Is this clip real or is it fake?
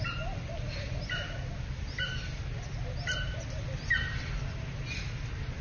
real